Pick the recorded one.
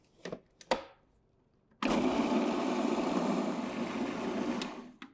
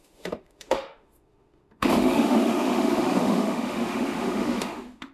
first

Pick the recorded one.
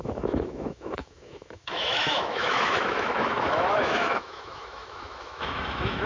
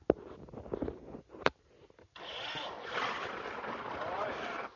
second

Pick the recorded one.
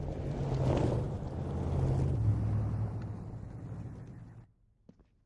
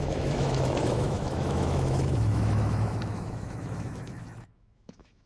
first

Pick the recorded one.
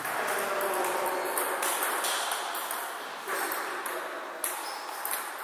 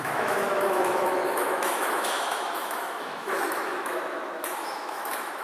first